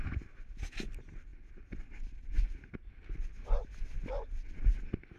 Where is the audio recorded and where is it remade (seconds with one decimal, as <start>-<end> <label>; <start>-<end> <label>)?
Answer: 0.0-5.2 recorded